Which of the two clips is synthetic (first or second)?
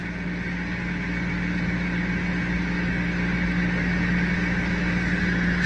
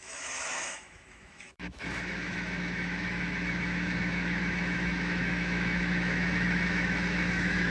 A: second